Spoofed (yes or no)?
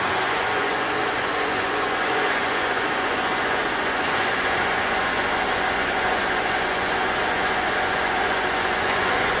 yes